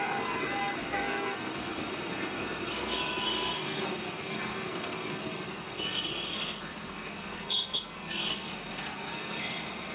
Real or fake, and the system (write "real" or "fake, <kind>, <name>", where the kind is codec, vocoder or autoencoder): fake, codec, SNAC